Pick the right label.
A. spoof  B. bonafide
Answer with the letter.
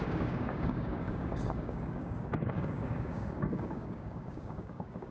A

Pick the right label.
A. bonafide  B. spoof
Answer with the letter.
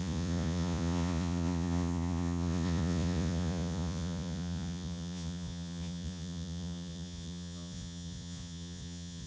B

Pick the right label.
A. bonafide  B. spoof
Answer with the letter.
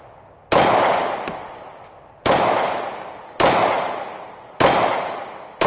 A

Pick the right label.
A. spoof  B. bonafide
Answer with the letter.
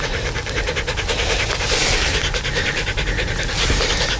B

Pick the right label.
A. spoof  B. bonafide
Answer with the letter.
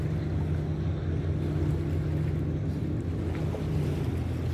B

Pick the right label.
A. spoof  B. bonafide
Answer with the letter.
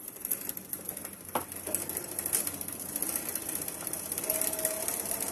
B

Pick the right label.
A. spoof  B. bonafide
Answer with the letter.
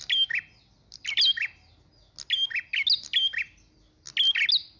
B